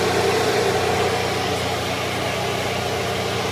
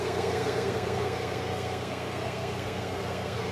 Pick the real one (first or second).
first